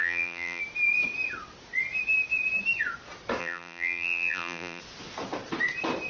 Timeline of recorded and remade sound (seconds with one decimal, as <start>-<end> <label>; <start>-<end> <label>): 0.0-0.6 remade; 0.6-3.4 recorded; 3.4-4.8 remade; 4.8-6.1 recorded

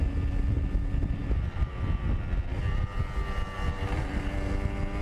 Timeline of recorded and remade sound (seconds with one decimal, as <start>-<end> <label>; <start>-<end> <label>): 0.0-5.0 recorded

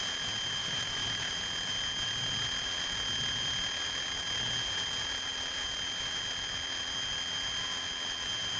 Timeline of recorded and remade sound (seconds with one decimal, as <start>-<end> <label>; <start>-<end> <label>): 0.0-0.6 recorded; 0.6-1.3 remade; 1.3-8.6 recorded

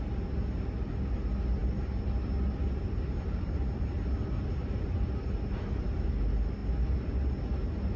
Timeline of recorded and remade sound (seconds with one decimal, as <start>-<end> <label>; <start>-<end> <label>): 0.0-4.6 recorded; 4.6-6.1 remade; 6.1-8.0 recorded

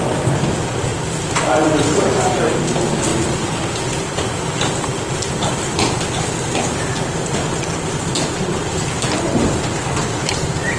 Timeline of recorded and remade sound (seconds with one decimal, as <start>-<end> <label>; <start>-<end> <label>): 0.0-0.9 recorded; 0.9-2.5 remade; 2.5-3.1 recorded; 3.1-7.0 remade; 7.0-10.8 recorded

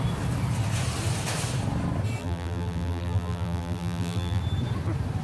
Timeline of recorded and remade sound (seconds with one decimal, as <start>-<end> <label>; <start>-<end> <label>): 0.0-2.2 recorded; 2.2-4.4 remade; 4.4-5.2 recorded

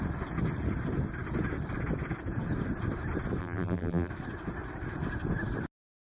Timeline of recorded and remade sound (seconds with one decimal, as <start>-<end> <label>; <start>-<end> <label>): 0.0-3.4 recorded; 3.4-4.1 remade; 4.1-6.2 recorded

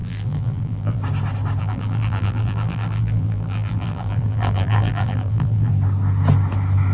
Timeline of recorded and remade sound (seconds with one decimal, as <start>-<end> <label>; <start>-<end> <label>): 0.0-1.0 remade; 1.0-1.6 recorded; 1.6-5.7 remade; 5.7-6.9 recorded